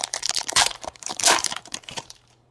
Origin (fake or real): fake